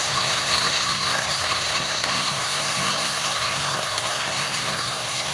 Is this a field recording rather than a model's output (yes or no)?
no